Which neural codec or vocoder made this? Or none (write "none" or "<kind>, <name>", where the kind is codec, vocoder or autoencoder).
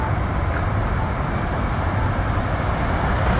none